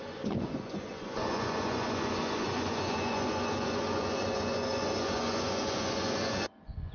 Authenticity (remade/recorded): remade